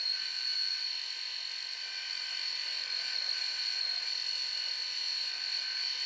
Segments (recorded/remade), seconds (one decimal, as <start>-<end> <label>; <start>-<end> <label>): 0.0-4.7 remade; 4.7-6.1 recorded